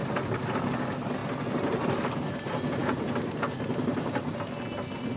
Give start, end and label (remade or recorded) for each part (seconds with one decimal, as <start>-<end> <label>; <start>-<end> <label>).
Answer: 0.0-0.7 remade; 0.7-5.2 recorded